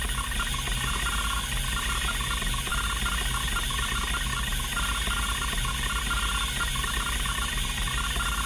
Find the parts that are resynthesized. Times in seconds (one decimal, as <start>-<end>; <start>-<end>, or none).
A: none